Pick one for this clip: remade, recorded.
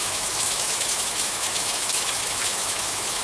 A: remade